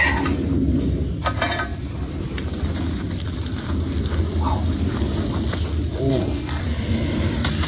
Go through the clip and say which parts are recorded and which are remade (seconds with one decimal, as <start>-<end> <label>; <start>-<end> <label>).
0.0-6.1 recorded; 6.1-6.6 remade; 6.6-7.7 recorded